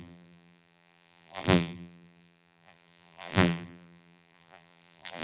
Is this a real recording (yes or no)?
no